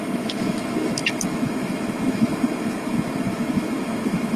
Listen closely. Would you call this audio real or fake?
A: fake